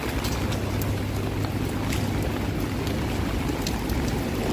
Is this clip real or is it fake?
real